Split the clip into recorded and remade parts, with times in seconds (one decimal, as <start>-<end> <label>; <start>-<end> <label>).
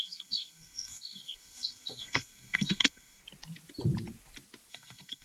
0.0-3.2 remade; 3.2-4.7 recorded; 4.7-5.2 remade